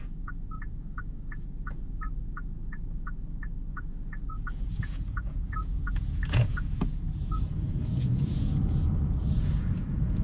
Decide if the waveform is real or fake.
fake